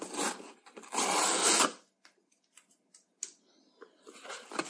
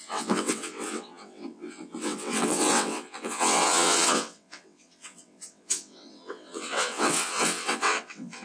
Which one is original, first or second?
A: first